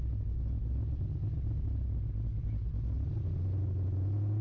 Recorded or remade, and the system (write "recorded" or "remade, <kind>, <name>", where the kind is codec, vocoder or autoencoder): recorded